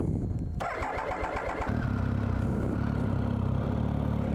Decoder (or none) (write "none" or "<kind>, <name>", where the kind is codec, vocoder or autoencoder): none